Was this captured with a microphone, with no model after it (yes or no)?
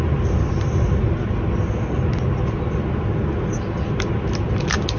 yes